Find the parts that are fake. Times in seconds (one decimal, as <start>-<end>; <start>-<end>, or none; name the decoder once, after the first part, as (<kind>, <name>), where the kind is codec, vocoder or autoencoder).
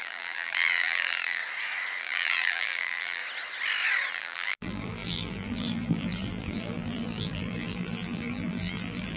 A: 0.0-1.4 (vocoder, BigVGAN v2); 2.0-3.2; 4.1-9.2